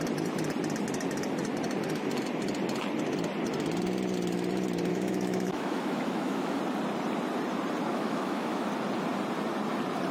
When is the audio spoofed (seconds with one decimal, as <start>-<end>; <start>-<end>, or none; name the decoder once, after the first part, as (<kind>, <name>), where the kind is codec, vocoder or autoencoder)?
4.9-6.6 (autoencoder, DAC-VAE); 7.9-8.7